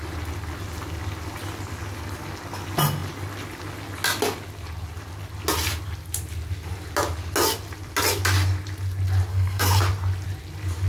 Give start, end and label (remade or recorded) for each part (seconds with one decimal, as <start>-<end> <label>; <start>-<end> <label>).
0.0-9.3 recorded; 9.3-9.8 remade; 9.8-10.9 recorded